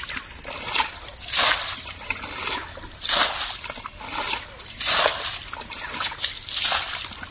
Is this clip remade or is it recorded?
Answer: recorded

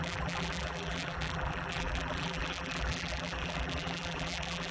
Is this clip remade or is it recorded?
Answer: remade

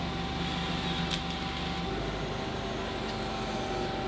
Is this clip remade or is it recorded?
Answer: recorded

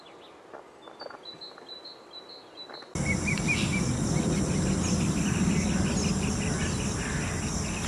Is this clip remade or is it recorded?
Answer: recorded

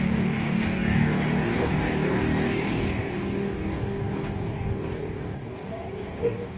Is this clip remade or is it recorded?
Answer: remade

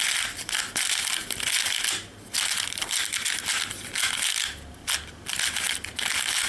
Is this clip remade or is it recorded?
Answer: recorded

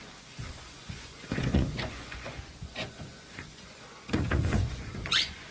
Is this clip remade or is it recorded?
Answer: remade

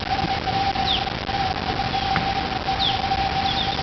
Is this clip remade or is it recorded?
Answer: recorded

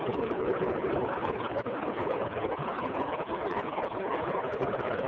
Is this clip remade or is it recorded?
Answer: remade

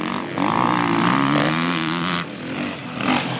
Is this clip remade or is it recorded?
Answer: recorded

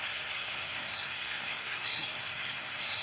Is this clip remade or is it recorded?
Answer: remade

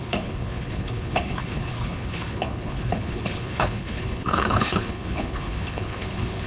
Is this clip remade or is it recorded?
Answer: remade